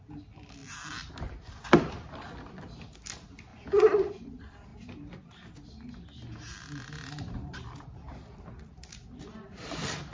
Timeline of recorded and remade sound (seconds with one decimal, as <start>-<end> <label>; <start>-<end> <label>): 0.0-10.1 recorded